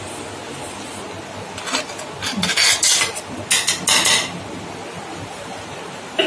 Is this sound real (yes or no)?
yes